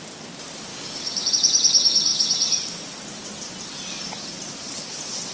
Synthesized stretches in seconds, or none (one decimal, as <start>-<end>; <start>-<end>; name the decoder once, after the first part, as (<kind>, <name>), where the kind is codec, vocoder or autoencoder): 0.7-1.3 (codec, DAC)